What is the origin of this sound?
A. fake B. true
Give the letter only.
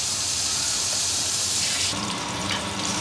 A